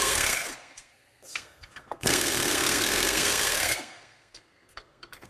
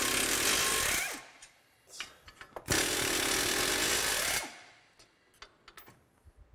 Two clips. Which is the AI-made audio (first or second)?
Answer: first